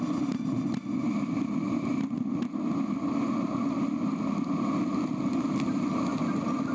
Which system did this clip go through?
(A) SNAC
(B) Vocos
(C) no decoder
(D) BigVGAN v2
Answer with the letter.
C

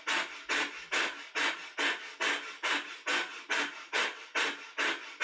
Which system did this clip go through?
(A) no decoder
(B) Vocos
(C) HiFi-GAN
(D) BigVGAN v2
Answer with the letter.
A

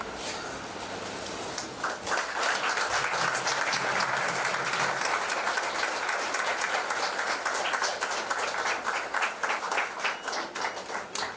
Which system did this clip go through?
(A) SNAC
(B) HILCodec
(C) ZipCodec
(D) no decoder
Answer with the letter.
D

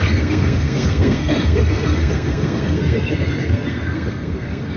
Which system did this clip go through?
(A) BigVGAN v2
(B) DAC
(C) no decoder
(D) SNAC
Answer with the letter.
D